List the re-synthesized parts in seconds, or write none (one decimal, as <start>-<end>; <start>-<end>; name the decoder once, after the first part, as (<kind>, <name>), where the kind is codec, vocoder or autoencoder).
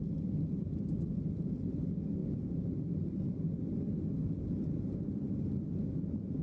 2.2-2.7 (vocoder, BigVGAN v2)